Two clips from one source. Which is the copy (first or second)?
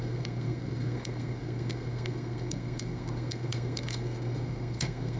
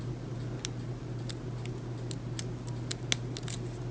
first